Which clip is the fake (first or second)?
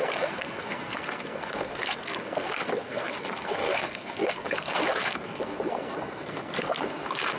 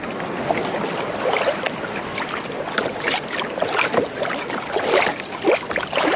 first